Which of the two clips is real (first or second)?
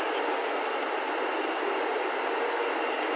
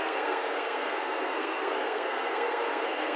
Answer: first